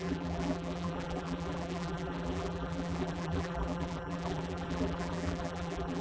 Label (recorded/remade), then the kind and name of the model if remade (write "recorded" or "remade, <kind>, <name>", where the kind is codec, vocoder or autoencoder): remade, vocoder, BigVGAN v2